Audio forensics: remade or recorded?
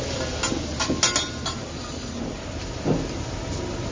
recorded